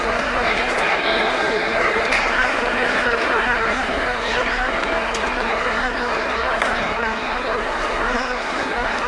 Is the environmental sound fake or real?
fake